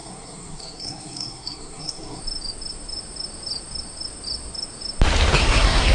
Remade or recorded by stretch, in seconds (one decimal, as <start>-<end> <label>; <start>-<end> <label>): 0.0-2.2 remade; 2.2-5.4 recorded; 5.4-5.9 remade